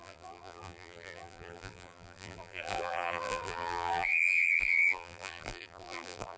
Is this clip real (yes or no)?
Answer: no